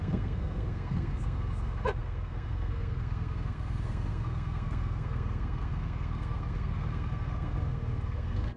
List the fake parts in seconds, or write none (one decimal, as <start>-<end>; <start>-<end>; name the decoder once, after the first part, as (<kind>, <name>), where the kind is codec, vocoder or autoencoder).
0.0-8.6 (codec, SNAC)